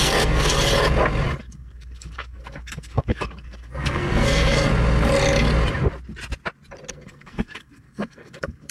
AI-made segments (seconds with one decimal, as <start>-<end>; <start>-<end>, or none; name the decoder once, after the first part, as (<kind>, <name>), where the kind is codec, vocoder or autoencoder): 0.0-0.7 (codec, SNAC); 1.4-4.7; 6.9-8.7